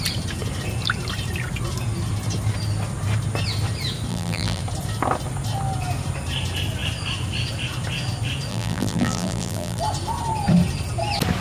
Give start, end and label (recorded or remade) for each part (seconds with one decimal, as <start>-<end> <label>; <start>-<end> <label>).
0.0-4.1 recorded; 4.1-4.6 remade; 4.6-8.5 recorded; 8.5-9.8 remade; 9.8-11.4 recorded